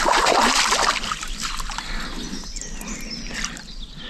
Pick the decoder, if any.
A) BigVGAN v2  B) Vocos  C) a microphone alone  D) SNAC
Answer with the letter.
C